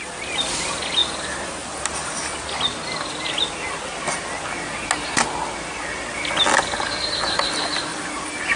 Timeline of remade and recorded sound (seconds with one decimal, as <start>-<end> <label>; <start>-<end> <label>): 0.0-7.9 recorded; 7.9-8.6 remade